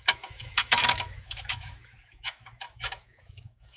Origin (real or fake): fake